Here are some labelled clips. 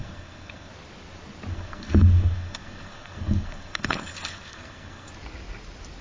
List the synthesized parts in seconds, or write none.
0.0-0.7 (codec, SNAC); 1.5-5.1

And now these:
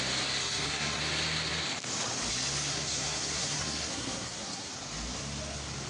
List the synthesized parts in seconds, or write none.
0.4-1.0 (codec, SNAC); 2.7-4.7

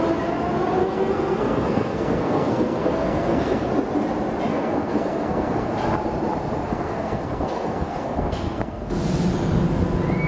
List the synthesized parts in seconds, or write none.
0.8-3.7 (codec, SNAC); 4.5-5.7; 6.7-9.0

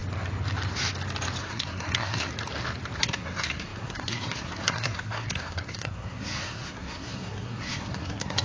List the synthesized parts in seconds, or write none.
1.4-2.3 (codec, SNAC); 3.0-8.4

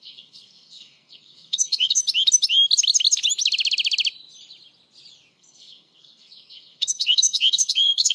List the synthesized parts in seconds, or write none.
0.0-2.0 (codec, SNAC); 5.3-8.1

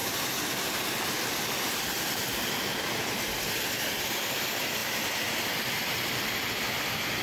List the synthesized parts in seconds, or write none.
none

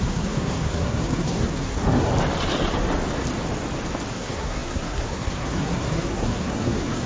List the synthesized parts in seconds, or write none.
0.0-2.1 (codec, SNAC); 4.1-7.1

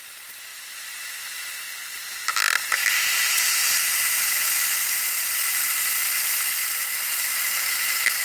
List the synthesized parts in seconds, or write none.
none